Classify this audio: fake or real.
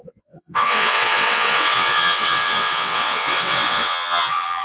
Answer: fake